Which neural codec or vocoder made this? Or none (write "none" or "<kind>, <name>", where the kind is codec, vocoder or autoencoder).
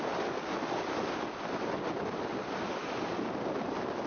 none